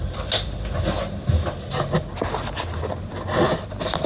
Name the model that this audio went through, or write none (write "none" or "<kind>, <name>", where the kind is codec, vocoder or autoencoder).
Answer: none